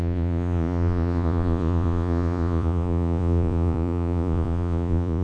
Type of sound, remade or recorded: remade